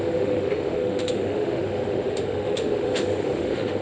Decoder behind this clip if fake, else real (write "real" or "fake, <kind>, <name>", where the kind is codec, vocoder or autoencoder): fake, autoencoder, DAC-VAE